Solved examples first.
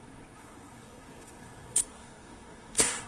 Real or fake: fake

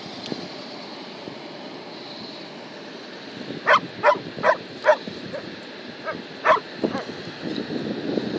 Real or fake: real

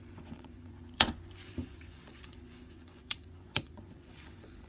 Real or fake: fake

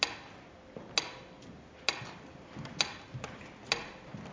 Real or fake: real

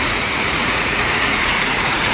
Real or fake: fake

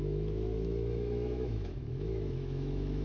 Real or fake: fake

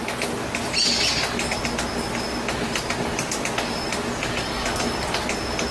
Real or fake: real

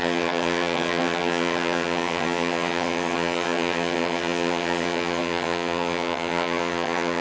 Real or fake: fake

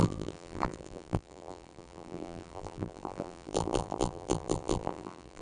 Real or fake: fake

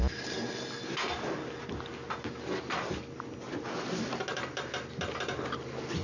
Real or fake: real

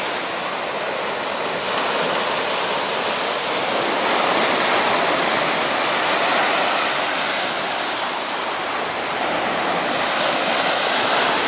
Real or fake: real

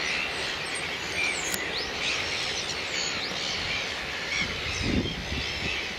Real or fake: real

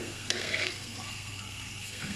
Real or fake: fake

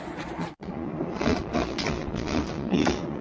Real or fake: fake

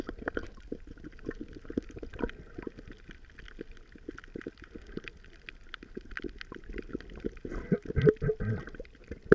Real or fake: real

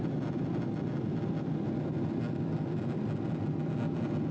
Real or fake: real